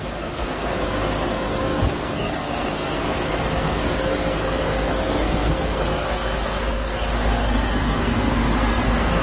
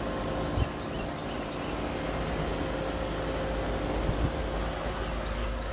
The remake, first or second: first